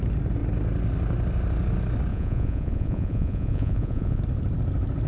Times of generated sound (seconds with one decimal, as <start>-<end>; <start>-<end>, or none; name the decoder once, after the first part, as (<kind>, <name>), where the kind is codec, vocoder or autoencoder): 2.1-4.2 (vocoder, Vocos)